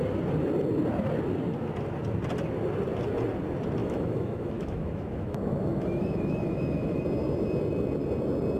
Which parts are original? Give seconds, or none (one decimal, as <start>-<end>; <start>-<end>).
0.0-3.8; 7.0-8.6